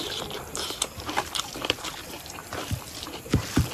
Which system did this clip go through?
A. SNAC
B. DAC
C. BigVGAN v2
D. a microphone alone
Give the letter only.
C